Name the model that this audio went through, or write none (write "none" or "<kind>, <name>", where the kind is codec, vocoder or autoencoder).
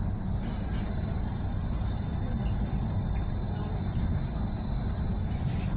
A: none